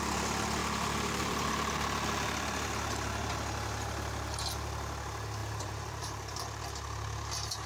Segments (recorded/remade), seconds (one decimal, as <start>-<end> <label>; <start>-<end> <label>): 0.0-0.6 recorded; 0.6-1.5 remade; 1.5-5.4 recorded; 5.4-6.6 remade; 6.6-7.7 recorded